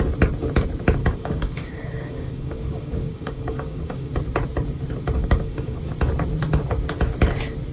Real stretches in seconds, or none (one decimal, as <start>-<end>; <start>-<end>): 0.0-1.0; 4.1-5.2; 5.8-7.7